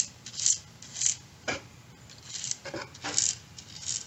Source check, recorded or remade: recorded